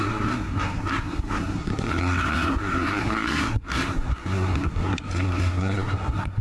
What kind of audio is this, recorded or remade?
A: remade